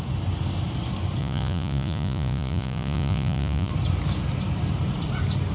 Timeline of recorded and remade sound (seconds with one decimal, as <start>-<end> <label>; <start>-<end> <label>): 0.0-1.2 recorded; 1.2-3.7 remade; 3.7-5.5 recorded